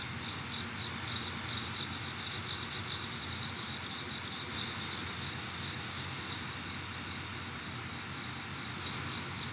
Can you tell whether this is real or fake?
real